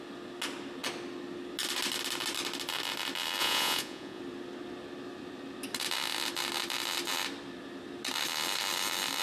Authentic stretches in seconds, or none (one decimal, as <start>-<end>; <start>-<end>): 0.0-3.4; 4.2-9.2